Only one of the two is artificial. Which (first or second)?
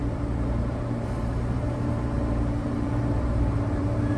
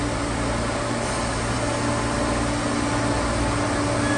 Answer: first